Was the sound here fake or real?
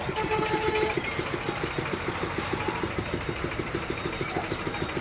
real